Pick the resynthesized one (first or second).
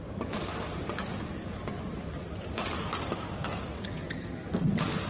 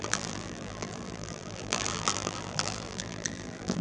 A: second